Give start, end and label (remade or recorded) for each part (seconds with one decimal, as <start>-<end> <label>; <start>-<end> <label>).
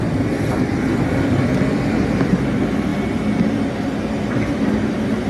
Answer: 0.0-2.9 remade; 2.9-4.7 recorded; 4.7-5.3 remade